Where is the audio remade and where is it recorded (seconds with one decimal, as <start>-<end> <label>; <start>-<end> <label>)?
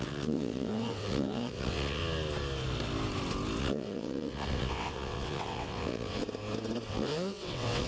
0.0-2.0 remade; 2.0-3.6 recorded; 3.6-6.2 remade; 6.2-6.9 recorded; 6.9-7.9 remade